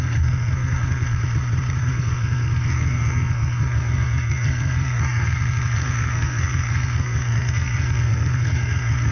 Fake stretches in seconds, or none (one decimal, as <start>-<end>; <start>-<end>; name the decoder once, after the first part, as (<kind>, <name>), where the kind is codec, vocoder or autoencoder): 0.0-1.2 (codec, SNAC); 1.8-9.1